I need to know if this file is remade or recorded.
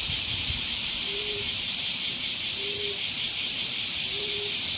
remade